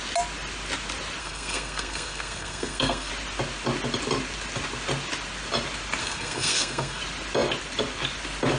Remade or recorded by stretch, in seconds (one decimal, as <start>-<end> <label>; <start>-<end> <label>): 0.0-1.2 recorded; 1.2-3.1 remade; 3.1-6.0 recorded; 6.0-7.0 remade; 7.0-8.6 recorded